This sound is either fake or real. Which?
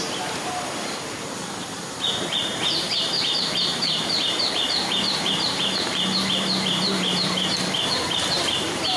fake